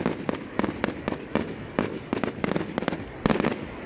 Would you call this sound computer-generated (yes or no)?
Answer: no